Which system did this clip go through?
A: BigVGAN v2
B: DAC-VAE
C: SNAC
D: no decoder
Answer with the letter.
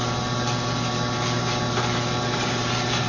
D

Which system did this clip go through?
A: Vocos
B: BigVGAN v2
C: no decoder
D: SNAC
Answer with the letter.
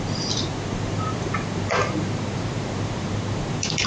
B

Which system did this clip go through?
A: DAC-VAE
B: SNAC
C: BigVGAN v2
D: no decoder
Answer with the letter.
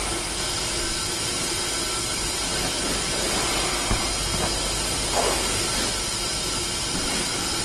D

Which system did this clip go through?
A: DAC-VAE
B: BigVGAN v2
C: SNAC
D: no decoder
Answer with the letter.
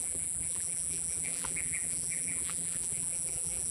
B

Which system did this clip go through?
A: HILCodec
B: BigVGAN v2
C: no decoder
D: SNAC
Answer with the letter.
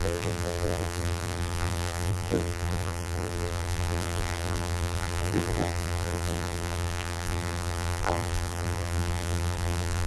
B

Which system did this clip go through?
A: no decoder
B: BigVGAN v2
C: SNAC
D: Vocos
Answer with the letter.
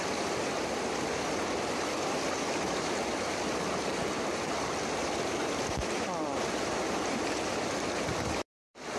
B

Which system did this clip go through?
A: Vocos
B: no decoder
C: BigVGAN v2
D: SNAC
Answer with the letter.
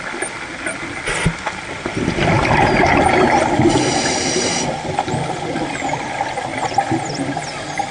B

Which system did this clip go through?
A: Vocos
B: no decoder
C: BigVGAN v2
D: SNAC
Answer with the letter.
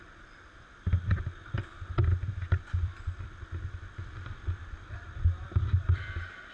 C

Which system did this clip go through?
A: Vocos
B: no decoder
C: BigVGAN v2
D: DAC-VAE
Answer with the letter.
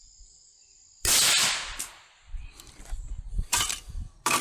C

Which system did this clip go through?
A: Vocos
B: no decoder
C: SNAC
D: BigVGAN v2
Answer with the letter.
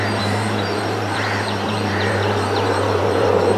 D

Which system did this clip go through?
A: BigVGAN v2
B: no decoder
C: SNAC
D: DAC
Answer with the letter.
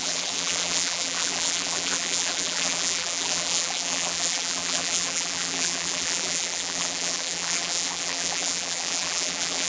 A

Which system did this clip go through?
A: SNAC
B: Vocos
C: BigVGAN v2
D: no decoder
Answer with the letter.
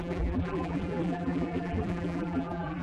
C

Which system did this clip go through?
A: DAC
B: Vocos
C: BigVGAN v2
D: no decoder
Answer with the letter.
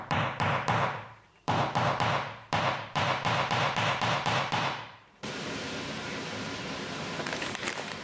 C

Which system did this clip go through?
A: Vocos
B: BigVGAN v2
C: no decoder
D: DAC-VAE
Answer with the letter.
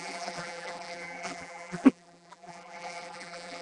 B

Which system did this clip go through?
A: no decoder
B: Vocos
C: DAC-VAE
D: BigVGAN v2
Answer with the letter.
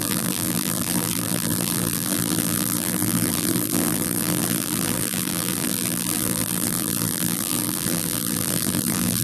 D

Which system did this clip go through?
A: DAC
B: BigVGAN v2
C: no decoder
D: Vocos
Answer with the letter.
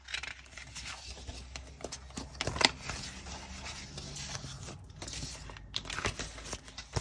C